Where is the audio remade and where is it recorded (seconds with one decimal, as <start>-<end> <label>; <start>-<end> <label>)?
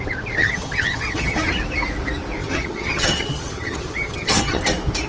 0.0-0.4 recorded; 0.4-1.5 remade; 1.5-2.4 recorded; 2.4-4.6 remade; 4.6-5.1 recorded